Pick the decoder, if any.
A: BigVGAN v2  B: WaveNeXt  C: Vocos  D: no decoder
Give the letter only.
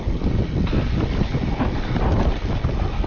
D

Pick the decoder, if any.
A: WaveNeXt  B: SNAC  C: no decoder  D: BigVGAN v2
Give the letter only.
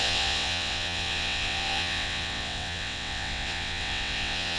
A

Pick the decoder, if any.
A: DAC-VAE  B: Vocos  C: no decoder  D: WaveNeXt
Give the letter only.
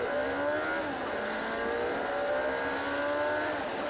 C